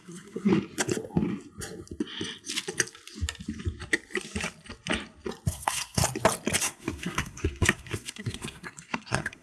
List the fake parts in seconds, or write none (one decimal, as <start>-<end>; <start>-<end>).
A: 0.0-0.5; 5.5-6.0; 6.6-9.4